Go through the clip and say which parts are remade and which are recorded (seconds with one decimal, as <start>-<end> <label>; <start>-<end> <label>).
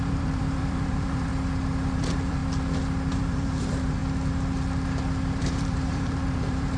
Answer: 0.0-1.3 remade; 1.3-1.9 recorded; 1.9-2.4 remade; 2.4-3.1 recorded; 3.1-4.0 remade; 4.0-5.4 recorded; 5.4-6.8 remade